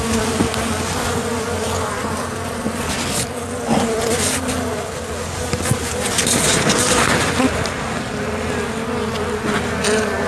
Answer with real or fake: real